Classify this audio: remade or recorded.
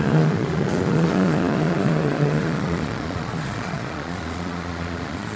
remade